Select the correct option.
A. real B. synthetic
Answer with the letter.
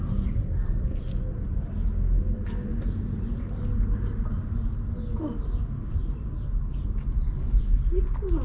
A